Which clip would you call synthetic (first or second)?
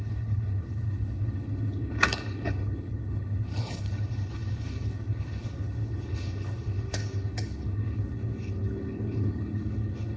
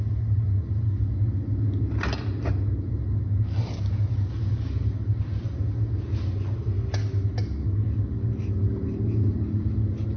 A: first